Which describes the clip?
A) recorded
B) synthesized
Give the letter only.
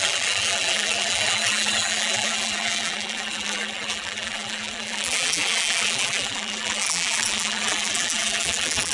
B